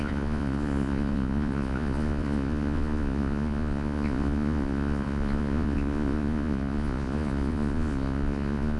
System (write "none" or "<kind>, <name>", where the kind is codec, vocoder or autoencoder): vocoder, Vocos